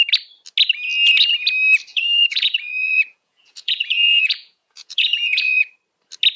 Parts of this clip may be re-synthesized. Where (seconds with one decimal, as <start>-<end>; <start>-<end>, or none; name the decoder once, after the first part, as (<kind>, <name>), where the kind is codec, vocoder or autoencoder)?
1.9-5.7 (vocoder, Vocos)